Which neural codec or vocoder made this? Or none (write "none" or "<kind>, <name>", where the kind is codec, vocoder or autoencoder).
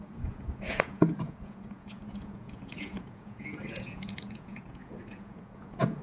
vocoder, Vocos